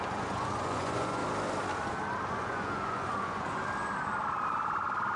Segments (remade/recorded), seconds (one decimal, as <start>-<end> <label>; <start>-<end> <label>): 0.0-1.2 remade; 1.2-2.3 recorded; 2.3-3.6 remade; 3.6-5.2 recorded